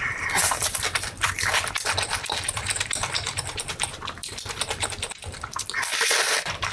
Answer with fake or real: fake